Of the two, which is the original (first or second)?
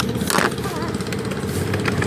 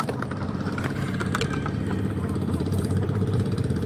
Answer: first